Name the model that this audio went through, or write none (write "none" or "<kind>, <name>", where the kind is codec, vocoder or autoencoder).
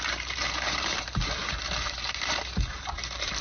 vocoder, BigVGAN v2